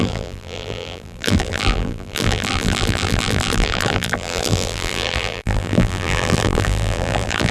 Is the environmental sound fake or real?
fake